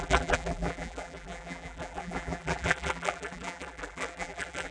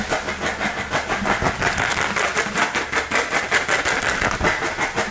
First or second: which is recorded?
second